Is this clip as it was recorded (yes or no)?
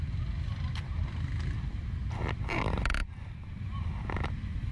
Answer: yes